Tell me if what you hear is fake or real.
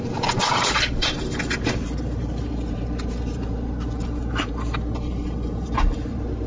fake